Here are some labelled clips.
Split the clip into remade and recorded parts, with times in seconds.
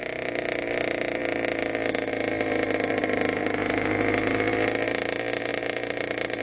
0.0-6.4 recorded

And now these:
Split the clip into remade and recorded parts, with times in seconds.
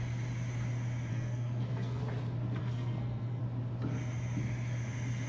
0.0-1.1 recorded; 1.1-2.0 remade; 2.0-2.6 recorded; 2.6-3.4 remade; 3.4-5.3 recorded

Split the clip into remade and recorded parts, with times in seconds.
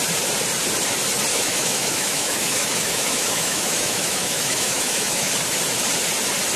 0.0-1.3 recorded; 1.3-5.3 remade; 5.3-6.6 recorded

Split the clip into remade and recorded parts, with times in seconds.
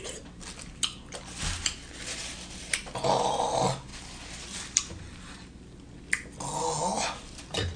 0.0-2.2 recorded; 2.2-2.9 remade; 2.9-3.9 recorded; 3.9-5.0 remade; 5.0-6.9 recorded; 6.9-7.8 remade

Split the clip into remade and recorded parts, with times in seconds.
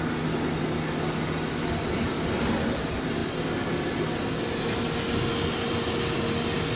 0.0-6.8 recorded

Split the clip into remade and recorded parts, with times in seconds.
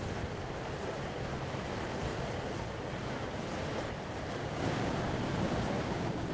0.0-4.4 recorded; 4.4-6.3 remade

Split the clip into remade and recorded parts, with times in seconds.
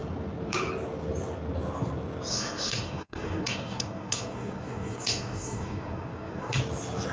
0.0-2.3 recorded; 2.3-6.6 remade; 6.6-7.1 recorded